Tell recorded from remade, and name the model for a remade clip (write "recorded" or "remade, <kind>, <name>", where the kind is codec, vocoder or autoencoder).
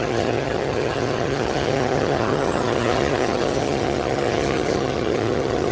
remade, vocoder, HiFi-GAN